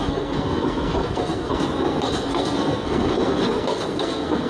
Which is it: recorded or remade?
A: remade